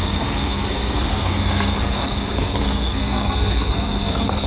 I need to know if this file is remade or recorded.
remade